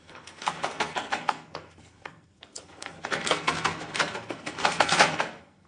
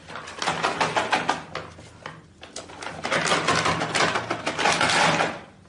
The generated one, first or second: first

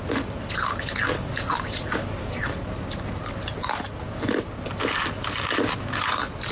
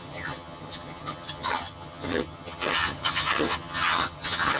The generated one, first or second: second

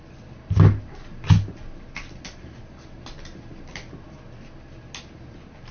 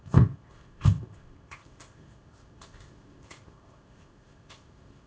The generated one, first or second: second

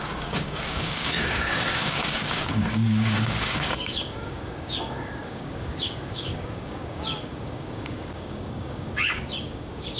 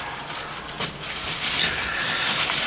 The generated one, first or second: first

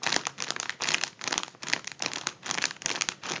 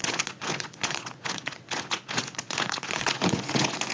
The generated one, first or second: second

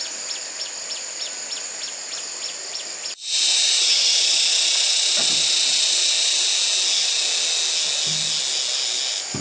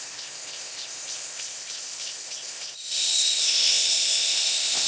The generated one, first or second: second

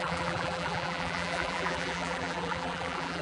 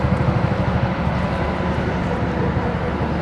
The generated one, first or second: first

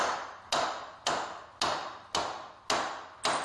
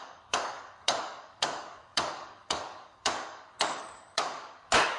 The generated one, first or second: second